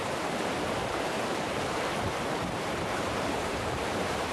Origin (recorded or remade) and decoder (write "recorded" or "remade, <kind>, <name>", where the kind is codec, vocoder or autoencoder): remade, vocoder, BigVGAN v2